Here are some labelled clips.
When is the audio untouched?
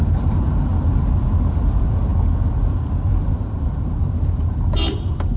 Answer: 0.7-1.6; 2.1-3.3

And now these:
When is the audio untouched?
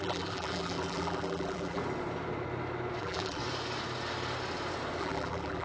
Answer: 1.8-3.0; 3.4-5.0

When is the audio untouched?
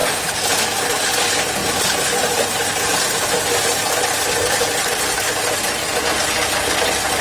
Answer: 0.6-1.6; 5.3-7.2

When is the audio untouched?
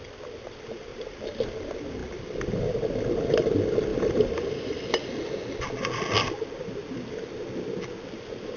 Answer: 0.0-0.9; 1.5-3.9; 5.1-8.6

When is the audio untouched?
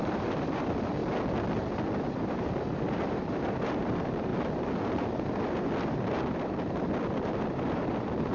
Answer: 1.0-2.1; 4.3-5.4